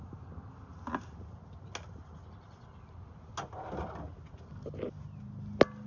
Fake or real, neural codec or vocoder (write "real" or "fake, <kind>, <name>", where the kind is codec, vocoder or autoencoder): real